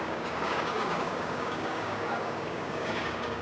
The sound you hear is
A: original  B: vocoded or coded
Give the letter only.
B